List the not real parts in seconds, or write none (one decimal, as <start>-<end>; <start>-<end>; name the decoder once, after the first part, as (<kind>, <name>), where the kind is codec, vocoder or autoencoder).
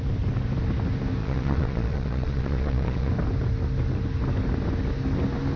1.2-3.1 (vocoder, Vocos)